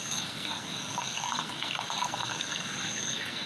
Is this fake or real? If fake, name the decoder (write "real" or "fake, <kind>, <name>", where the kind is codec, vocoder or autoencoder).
fake, codec, SNAC